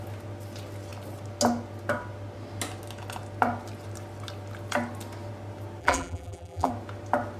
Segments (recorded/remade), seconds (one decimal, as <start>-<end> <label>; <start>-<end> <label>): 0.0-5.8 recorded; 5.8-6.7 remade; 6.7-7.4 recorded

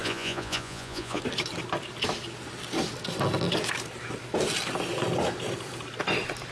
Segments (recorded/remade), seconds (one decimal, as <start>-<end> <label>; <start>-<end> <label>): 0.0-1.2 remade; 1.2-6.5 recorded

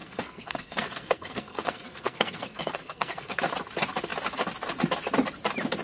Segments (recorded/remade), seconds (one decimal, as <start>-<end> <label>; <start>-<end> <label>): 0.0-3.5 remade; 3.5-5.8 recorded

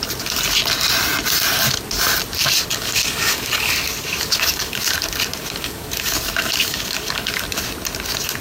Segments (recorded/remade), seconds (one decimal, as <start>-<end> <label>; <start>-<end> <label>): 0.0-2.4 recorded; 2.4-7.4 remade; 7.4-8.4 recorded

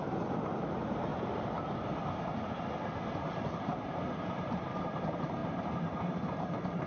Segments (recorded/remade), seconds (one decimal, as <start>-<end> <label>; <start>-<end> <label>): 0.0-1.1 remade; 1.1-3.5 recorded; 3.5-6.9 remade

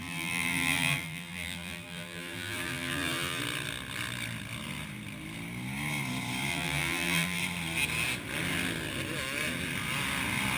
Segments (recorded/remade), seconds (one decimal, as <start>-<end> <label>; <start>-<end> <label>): 0.0-3.4 remade; 3.4-6.5 recorded; 6.5-7.4 remade; 7.4-10.6 recorded

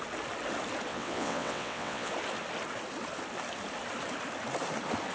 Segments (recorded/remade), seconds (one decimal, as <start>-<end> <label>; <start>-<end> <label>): 0.0-0.9 recorded; 0.9-2.1 remade; 2.1-5.1 recorded

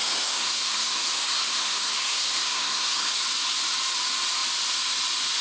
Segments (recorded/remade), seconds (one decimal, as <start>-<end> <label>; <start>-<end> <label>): 0.0-3.2 remade; 3.2-5.4 recorded